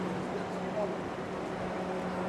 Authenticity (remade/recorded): recorded